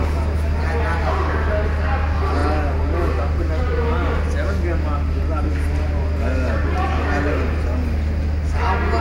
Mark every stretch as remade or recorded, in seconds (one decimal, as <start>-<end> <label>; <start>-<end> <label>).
0.0-9.0 recorded